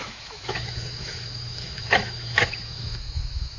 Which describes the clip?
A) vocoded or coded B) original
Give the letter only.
A